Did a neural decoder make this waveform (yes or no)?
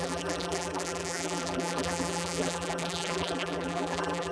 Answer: yes